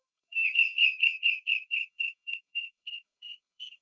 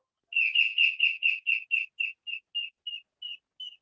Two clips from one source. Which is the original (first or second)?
second